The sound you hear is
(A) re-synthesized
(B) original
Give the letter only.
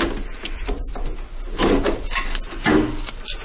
B